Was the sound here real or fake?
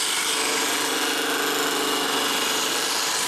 real